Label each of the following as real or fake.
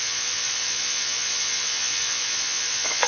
fake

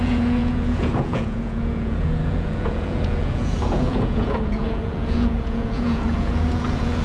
fake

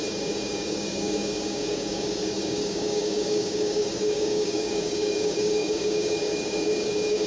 fake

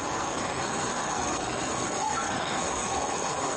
fake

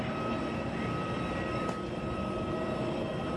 fake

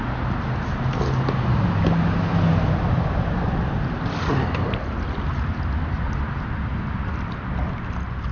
real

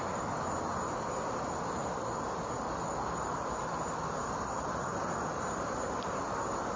real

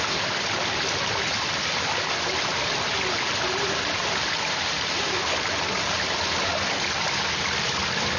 real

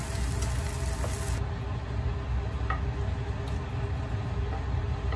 real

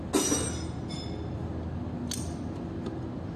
real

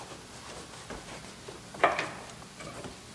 real